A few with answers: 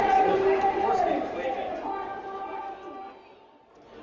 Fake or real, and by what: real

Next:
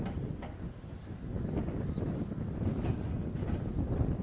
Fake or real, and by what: real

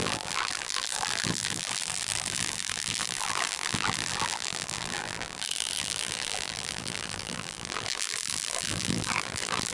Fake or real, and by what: fake, vocoder, BigVGAN v2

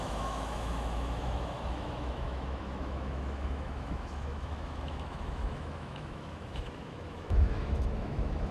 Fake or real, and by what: fake, autoencoder, DAC-VAE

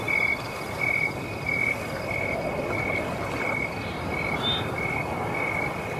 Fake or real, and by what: real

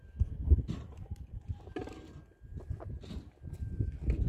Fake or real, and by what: real